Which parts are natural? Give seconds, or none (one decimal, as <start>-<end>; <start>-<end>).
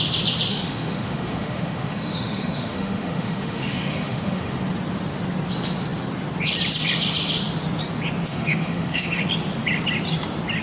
0.0-0.5; 4.6-8.3; 9.2-10.6